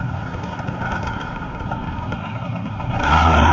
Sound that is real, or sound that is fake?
fake